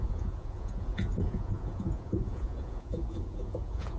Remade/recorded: remade